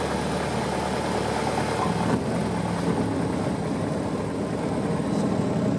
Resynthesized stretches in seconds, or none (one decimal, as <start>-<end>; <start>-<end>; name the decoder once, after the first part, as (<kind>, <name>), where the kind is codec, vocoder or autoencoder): none